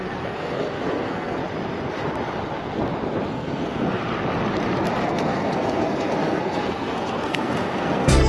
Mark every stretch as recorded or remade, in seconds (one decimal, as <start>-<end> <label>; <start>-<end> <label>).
0.0-1.4 remade; 1.4-3.3 recorded; 3.3-4.0 remade; 4.0-5.1 recorded; 5.1-8.3 remade